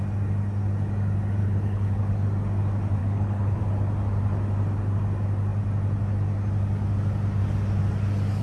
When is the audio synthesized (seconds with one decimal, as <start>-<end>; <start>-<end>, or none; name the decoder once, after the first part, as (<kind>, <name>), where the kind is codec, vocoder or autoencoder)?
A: 1.4-2.1 (codec, HILCodec); 3.0-3.6